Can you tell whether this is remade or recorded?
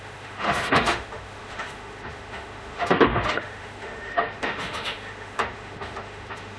remade